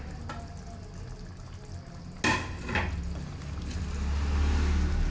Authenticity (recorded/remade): recorded